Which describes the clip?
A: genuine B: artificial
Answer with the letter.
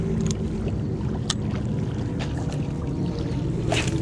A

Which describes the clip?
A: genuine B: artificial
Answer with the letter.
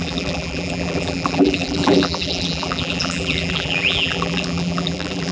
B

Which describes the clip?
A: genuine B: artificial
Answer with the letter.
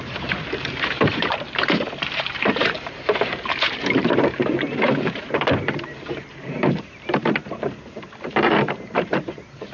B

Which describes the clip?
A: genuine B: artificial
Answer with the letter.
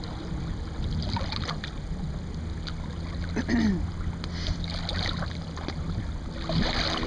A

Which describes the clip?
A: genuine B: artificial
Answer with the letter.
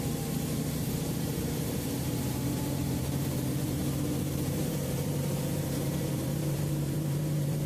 B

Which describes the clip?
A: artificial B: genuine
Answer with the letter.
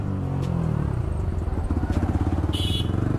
B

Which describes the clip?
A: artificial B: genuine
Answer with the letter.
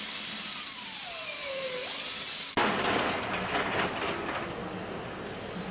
B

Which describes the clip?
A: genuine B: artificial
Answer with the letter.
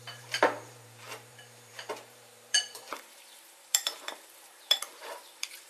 B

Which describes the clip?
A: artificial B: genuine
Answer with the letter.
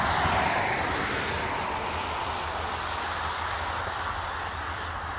A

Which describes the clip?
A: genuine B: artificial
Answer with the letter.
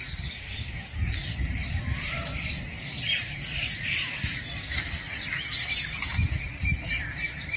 B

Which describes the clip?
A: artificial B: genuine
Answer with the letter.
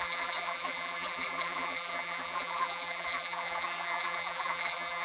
A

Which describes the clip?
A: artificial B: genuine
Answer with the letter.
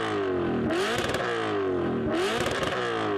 B